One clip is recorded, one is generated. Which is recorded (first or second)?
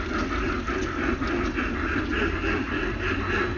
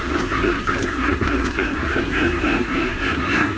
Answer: first